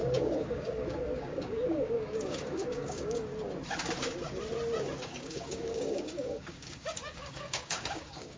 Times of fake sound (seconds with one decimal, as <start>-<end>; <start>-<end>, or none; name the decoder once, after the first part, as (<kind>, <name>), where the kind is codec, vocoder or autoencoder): 0.0-3.3 (codec, DAC); 5.0-8.4

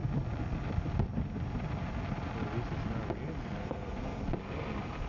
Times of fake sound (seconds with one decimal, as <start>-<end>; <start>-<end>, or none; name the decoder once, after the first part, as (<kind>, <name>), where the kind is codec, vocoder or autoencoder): 3.4-4.2 (codec, SNAC)

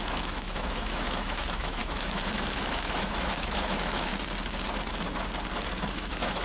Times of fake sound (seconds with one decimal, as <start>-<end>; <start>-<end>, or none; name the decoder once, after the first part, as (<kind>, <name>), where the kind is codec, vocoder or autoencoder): 0.0-4.1 (autoencoder, DAC-VAE); 5.9-6.4

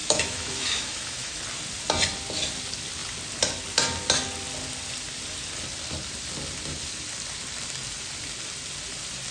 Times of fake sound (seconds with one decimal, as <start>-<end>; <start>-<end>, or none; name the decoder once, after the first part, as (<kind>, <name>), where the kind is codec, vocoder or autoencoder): 0.0-1.4 (autoencoder, DAC-VAE)

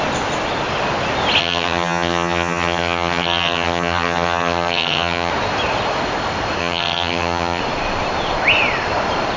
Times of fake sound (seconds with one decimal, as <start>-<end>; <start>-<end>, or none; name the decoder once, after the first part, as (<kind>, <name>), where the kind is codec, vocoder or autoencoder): 1.4-5.3 (vocoder, HiFi-GAN); 6.6-7.6